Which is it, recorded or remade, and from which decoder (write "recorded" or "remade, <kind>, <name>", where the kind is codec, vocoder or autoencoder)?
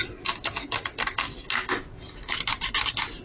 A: recorded